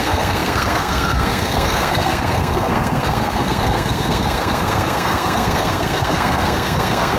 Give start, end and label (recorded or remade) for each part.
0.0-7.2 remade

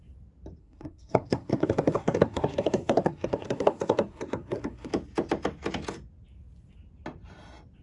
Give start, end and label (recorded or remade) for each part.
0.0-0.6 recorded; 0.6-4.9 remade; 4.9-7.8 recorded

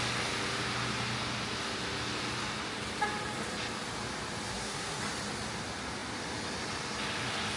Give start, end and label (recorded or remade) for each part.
0.0-4.5 recorded; 4.5-5.0 remade; 5.0-7.6 recorded

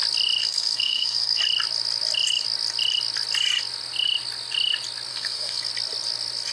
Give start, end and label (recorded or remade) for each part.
0.0-0.4 recorded; 0.4-1.4 remade; 1.4-5.1 recorded; 5.1-5.7 remade; 5.7-6.5 recorded

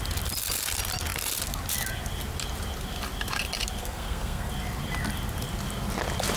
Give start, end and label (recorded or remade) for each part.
0.0-3.8 recorded; 3.8-4.5 remade; 4.5-6.4 recorded